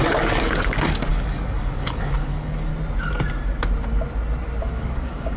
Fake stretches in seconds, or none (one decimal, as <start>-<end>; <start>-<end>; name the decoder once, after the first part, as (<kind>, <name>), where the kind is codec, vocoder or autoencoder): 0.0-2.7 (codec, DAC); 4.6-5.4

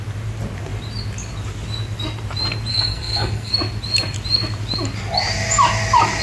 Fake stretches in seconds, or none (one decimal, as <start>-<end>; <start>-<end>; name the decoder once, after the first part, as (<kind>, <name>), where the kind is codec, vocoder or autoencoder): 2.7-3.5 (codec, SNAC)

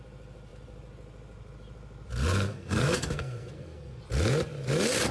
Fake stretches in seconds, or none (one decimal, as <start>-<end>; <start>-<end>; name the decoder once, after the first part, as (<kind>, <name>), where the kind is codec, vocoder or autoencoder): 2.5-4.0 (codec, SNAC)

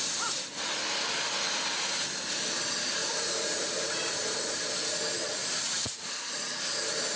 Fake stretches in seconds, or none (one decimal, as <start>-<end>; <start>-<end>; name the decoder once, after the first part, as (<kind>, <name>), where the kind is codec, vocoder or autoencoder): 3.0-4.7 (vocoder, BigVGAN v2); 5.4-6.1

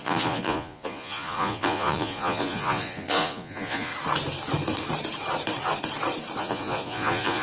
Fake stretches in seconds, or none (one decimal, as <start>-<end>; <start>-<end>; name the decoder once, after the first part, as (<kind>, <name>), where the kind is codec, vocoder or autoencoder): 0.0-3.9 (vocoder, Vocos); 6.4-7.4